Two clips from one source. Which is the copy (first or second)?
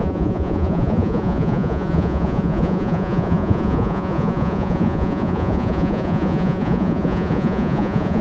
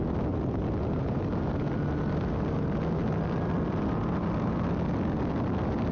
first